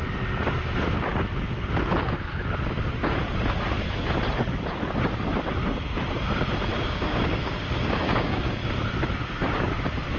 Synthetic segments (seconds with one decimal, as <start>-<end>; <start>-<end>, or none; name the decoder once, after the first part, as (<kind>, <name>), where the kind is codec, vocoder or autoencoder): 6.7-8.5 (codec, DAC)